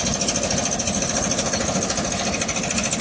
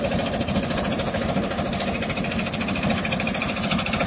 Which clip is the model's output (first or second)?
second